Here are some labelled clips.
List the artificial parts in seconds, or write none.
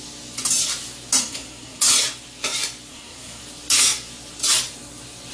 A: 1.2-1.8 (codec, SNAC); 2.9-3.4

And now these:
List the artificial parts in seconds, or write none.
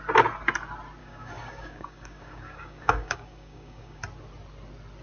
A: 1.0-4.0 (codec, DAC)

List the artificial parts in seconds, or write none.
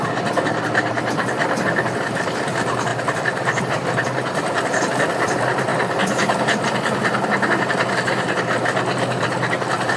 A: 0.0-5.7 (vocoder, BigVGAN v2); 7.9-10.0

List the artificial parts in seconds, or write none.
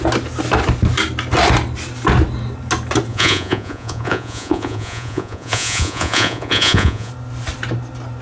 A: 3.1-7.1 (vocoder, Vocos)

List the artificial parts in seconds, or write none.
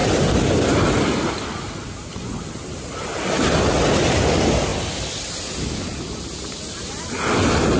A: none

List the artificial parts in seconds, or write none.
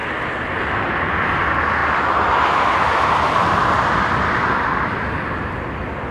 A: 1.8-5.5 (vocoder, BigVGAN v2)